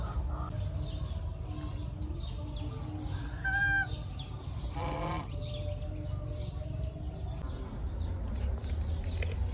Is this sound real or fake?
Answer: real